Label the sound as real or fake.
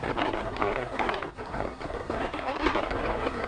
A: fake